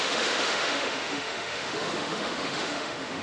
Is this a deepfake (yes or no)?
yes